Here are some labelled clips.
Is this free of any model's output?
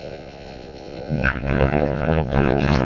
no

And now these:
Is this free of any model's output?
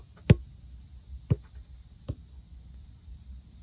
yes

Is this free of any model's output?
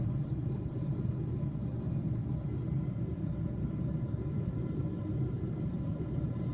yes